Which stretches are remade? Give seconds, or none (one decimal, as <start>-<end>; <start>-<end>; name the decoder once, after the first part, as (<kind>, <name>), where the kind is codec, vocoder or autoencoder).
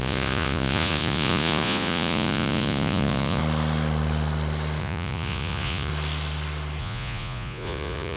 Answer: 0.0-3.4 (vocoder, Vocos); 4.8-5.9; 6.8-8.2